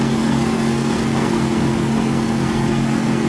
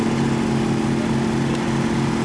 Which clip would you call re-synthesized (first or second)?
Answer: first